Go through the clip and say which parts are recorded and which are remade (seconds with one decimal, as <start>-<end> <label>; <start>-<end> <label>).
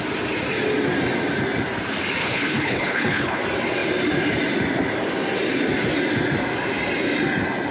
0.0-2.2 recorded; 2.2-3.4 remade; 3.4-7.7 recorded